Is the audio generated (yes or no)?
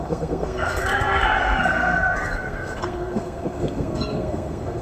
yes